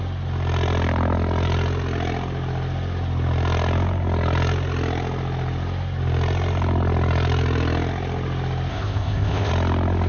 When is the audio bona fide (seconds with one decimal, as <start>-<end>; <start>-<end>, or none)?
0.0-8.7; 9.5-10.1